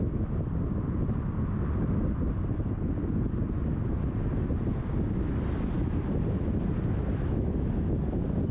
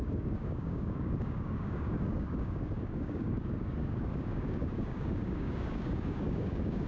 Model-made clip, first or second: second